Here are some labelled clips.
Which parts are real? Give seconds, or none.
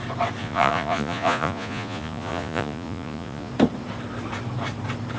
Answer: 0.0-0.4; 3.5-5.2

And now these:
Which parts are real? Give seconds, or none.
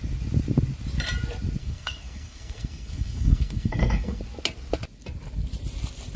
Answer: 0.0-1.6; 4.2-6.2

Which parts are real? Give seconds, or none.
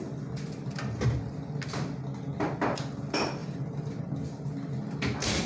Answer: 0.0-3.4; 3.9-5.5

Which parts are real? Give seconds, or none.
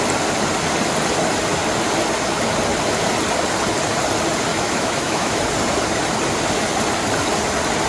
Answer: 0.0-4.5; 5.4-7.9